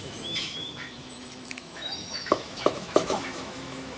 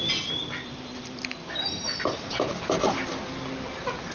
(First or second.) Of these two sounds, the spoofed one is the first